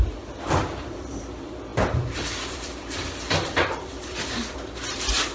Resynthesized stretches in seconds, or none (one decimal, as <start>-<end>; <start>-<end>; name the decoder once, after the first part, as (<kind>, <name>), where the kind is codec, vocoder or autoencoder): 1.7-5.3 (vocoder, BigVGAN v2)

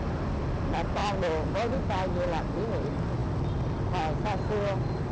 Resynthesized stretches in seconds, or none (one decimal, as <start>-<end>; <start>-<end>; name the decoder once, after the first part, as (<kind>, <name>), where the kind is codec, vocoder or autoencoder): none

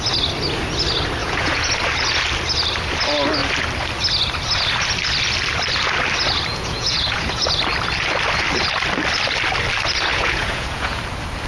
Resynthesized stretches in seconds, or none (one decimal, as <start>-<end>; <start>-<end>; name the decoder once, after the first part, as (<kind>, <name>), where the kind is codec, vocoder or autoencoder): 1.2-1.7 (vocoder, Vocos); 6.5-7.5; 10.1-11.0

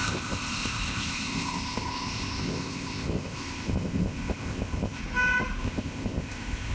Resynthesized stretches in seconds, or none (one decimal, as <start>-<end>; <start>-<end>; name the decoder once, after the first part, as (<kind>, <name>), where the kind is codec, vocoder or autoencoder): 0.0-5.0 (codec, ZipCodec); 5.6-6.7